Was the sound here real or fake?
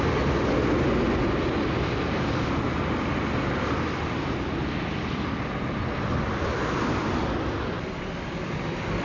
real